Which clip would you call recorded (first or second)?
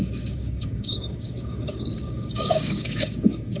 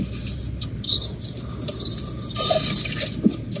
second